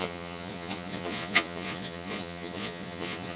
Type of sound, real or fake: fake